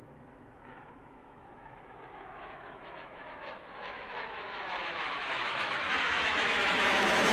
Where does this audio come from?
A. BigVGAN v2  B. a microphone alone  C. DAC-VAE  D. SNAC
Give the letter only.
C